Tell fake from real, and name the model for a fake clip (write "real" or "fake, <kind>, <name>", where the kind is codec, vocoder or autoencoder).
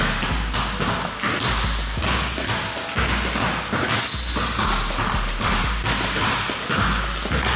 real